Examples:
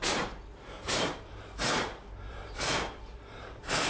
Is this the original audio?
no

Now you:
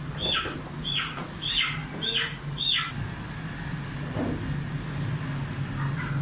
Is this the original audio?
yes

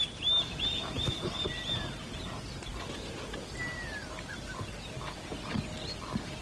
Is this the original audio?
yes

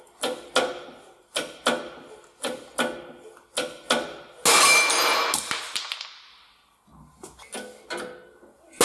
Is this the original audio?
yes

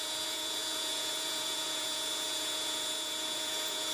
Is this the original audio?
no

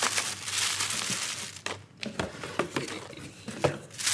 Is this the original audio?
yes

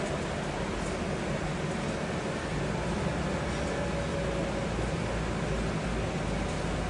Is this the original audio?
yes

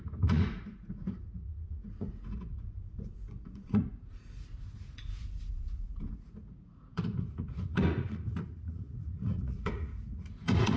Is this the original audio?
no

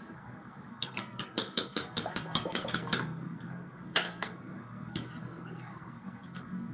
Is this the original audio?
no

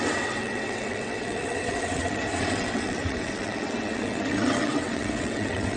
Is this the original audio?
no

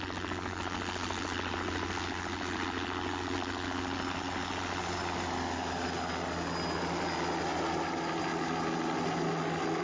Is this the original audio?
yes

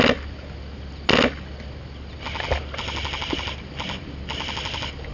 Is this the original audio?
yes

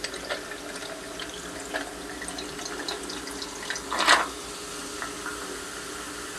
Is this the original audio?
yes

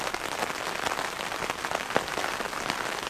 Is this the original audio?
yes